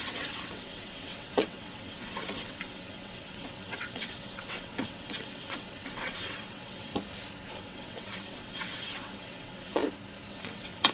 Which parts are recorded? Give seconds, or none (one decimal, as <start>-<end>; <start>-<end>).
6.9-7.5; 9.8-10.3